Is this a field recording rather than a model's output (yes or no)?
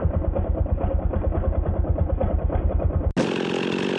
yes